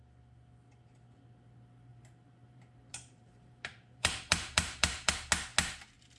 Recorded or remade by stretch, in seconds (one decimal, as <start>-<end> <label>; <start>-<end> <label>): 0.0-1.9 recorded; 1.9-5.1 remade; 5.1-6.2 recorded